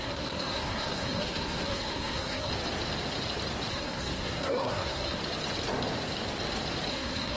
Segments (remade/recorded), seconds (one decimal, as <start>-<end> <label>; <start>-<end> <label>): 0.0-2.5 remade; 2.5-3.7 recorded; 3.7-5.2 remade; 5.2-6.9 recorded; 6.9-7.4 remade